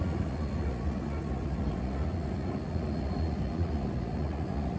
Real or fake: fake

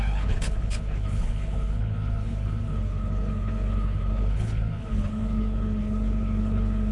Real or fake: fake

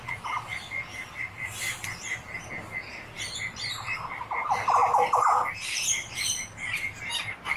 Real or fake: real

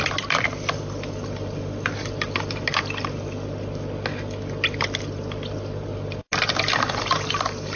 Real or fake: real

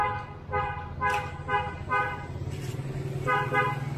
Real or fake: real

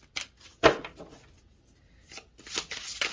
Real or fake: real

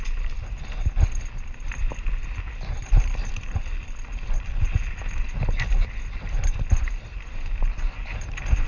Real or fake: real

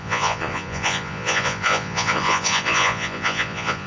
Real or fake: fake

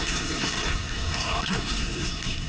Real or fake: fake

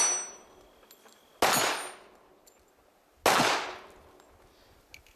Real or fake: real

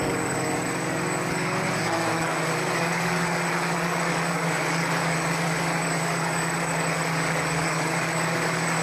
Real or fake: fake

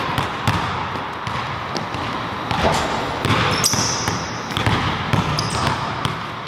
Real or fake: real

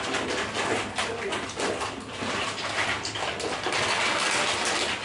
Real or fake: real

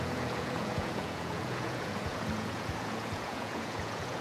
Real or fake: fake